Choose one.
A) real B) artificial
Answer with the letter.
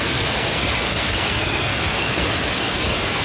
B